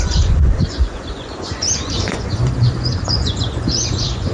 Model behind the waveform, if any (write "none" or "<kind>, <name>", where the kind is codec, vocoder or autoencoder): vocoder, Vocos